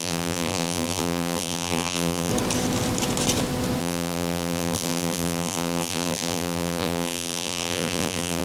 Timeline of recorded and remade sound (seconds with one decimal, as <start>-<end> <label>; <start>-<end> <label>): 0.0-2.3 remade; 2.3-3.8 recorded; 3.8-8.4 remade